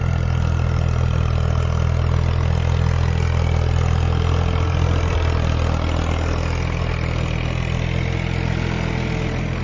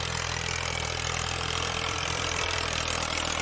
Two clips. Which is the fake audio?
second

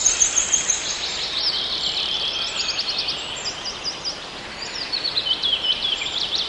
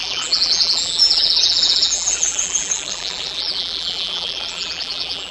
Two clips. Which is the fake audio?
second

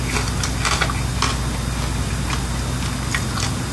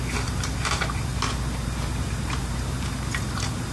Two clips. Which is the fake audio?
second